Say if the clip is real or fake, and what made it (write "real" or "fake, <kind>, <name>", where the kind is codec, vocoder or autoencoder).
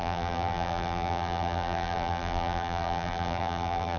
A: fake, vocoder, BigVGAN v2